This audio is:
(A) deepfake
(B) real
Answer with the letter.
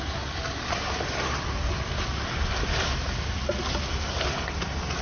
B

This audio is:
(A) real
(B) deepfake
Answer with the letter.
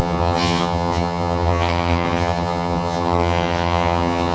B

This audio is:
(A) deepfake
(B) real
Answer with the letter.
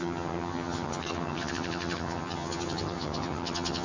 A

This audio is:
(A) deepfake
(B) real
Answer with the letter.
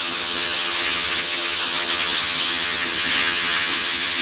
A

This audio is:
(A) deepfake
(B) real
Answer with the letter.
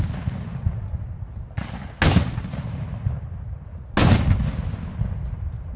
B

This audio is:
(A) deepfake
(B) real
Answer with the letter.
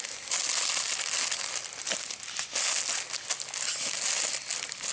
B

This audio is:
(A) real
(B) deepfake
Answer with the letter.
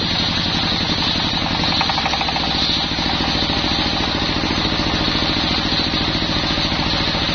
A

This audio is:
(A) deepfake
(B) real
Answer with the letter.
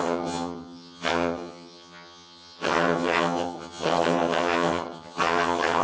A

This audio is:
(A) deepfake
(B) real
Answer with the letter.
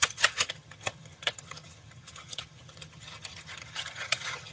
A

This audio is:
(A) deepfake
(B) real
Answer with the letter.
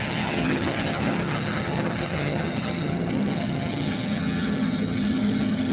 A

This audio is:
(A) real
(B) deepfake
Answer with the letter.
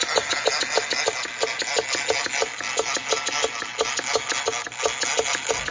A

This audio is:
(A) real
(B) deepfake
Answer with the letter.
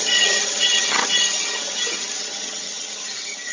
B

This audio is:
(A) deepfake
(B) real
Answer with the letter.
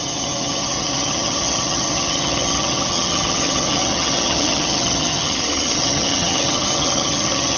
A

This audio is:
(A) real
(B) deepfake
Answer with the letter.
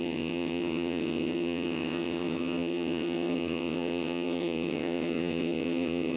B